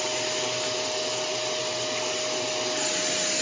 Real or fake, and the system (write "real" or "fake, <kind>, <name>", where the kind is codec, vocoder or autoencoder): real